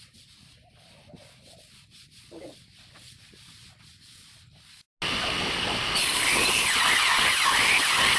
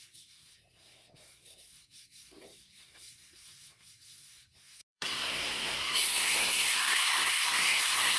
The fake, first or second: second